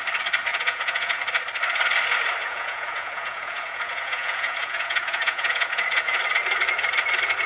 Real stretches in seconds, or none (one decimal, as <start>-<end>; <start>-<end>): 0.0-0.5; 1.2-2.4; 6.2-7.5